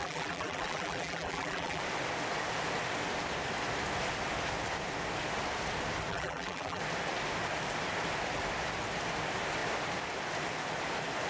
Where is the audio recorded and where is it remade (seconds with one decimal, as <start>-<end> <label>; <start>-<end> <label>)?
0.0-1.8 remade; 1.8-6.1 recorded; 6.1-6.8 remade; 6.8-11.3 recorded